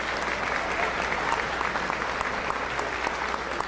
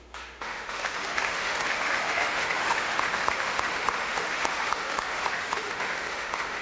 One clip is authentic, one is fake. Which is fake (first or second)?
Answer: second